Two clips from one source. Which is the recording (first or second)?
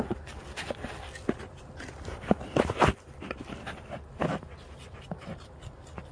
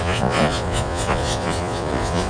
first